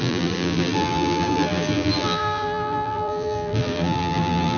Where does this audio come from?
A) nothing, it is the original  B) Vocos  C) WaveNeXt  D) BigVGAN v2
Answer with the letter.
D